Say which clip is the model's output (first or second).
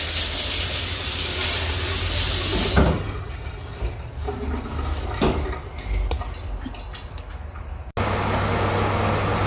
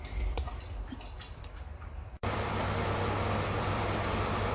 second